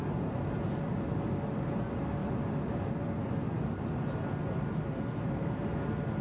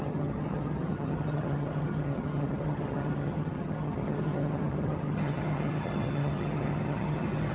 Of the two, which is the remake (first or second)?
second